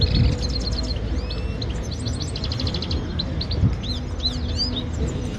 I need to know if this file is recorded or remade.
recorded